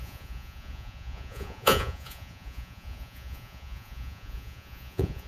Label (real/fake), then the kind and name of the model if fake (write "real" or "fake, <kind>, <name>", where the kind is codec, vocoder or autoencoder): fake, vocoder, Vocos